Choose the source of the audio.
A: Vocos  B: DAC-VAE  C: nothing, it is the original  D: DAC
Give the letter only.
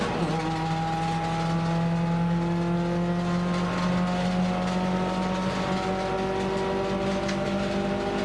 C